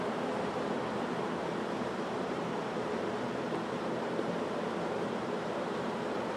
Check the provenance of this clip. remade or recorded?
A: remade